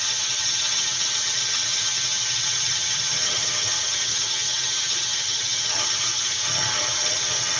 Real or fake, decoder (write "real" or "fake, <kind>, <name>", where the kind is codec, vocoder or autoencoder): fake, vocoder, HiFi-GAN